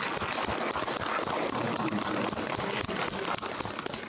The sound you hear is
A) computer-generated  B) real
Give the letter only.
B